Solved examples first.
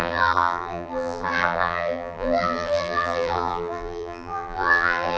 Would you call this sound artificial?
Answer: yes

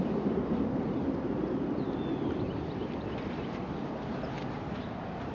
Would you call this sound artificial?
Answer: yes